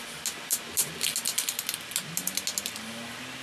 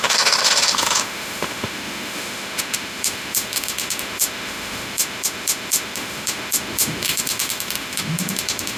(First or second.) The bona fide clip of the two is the first